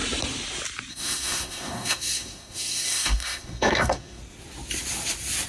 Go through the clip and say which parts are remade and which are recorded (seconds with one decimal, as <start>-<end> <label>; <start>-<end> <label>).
0.0-0.9 recorded; 0.9-4.2 remade; 4.2-5.5 recorded